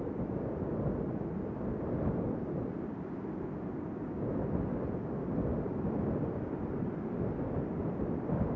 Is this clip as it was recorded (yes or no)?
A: yes